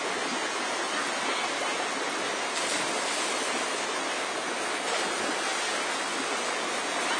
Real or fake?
real